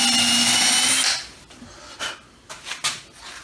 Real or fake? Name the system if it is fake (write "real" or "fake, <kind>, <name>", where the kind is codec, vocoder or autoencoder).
real